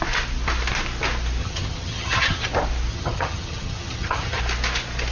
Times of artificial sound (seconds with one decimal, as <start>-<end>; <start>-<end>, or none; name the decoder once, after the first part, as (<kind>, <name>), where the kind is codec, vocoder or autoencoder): 1.4-2.5 (vocoder, HiFi-GAN); 2.9-4.4